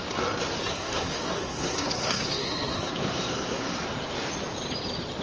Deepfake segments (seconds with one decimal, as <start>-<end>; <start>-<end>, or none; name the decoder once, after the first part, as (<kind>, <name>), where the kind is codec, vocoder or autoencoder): 0.7-3.8 (codec, SNAC)